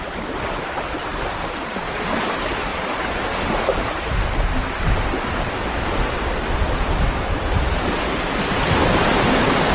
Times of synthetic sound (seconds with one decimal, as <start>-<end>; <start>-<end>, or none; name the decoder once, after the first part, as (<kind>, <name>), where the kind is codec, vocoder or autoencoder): 0.0-1.1 (vocoder, BigVGAN v2); 1.8-2.7; 7.3-9.7